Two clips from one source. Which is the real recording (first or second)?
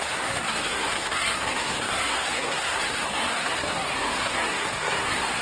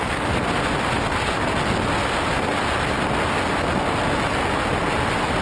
second